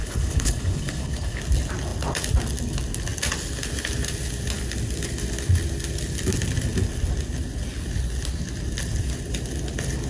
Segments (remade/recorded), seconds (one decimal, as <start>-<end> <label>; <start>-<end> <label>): 0.0-1.4 remade; 1.4-10.1 recorded